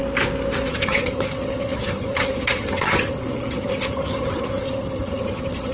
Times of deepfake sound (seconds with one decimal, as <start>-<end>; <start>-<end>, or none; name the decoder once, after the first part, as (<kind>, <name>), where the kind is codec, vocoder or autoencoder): 0.7-5.7 (vocoder, HiFi-GAN)

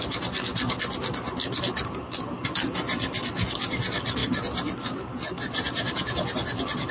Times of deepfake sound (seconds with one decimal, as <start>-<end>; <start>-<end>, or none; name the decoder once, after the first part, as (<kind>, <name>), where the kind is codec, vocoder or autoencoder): none

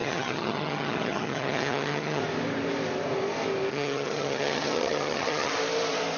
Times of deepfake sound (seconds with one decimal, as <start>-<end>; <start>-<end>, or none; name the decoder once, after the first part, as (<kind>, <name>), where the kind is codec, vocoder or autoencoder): 0.0-2.2 (vocoder, HiFi-GAN); 3.7-5.5

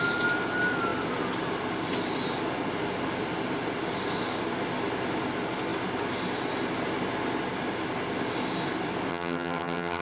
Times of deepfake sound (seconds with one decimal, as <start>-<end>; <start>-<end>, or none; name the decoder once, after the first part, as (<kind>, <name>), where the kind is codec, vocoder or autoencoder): 9.1-10.0 (vocoder, HiFi-GAN)

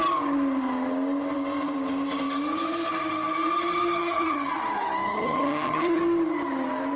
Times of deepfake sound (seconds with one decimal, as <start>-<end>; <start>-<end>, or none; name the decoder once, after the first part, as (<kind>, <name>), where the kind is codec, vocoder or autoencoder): 4.0-4.5 (vocoder, HiFi-GAN); 5.1-6.0

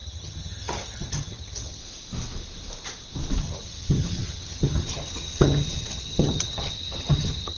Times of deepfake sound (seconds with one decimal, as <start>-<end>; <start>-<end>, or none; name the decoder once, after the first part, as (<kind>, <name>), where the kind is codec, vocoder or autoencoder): 0.0-1.8 (vocoder, HiFi-GAN); 3.4-7.6

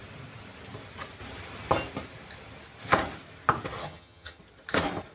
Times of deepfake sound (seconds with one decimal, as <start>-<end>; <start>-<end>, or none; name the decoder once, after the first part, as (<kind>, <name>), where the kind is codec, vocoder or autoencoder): 3.8-4.4 (vocoder, HiFi-GAN)

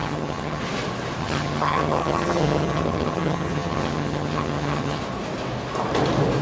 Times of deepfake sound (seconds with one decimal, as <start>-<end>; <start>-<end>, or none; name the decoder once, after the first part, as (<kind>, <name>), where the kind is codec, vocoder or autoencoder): 0.0-0.6 (vocoder, HiFi-GAN); 1.2-5.0